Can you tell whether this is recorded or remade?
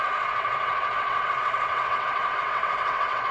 remade